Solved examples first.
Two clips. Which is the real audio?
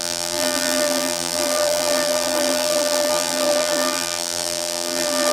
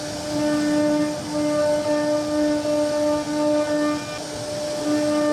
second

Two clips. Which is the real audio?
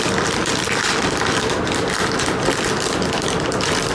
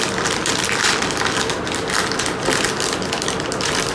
second